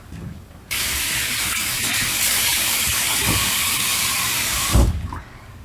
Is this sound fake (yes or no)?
yes